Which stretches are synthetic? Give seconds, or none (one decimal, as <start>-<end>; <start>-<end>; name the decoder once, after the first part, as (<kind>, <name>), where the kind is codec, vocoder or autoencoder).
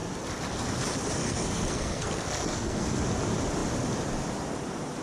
1.2-3.0 (codec, SNAC)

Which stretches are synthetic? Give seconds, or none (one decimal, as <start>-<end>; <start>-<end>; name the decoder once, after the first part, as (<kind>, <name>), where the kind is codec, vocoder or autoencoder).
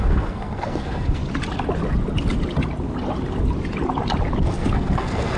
0.0-1.2 (codec, SNAC); 4.4-5.4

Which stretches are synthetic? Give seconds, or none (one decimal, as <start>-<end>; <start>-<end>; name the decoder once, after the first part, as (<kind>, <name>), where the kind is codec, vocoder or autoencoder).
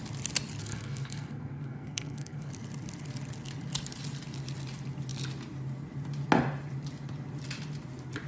0.6-2.5 (codec, SNAC)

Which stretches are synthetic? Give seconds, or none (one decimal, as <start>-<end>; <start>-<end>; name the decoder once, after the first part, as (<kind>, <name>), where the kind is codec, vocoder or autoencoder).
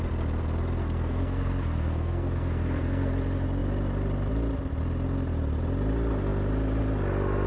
0.8-3.1 (codec, SNAC)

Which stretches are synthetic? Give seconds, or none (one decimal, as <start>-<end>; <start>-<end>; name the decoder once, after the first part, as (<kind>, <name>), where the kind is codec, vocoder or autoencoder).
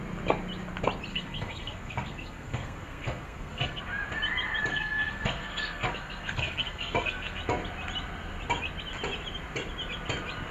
1.1-3.8 (codec, SNAC); 4.7-7.4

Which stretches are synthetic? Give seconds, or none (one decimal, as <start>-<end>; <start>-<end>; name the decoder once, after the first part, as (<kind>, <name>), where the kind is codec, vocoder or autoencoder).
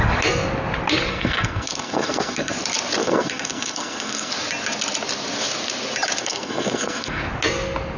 1.1-2.5 (codec, SNAC); 3.0-4.3; 6.2-7.2